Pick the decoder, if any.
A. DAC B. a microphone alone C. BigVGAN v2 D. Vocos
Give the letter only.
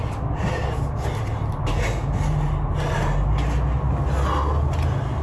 B